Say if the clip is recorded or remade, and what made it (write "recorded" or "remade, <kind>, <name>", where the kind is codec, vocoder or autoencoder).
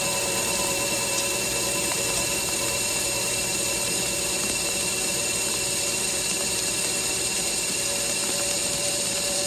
remade, vocoder, BigVGAN v2